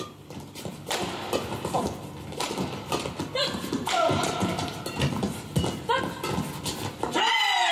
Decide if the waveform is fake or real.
real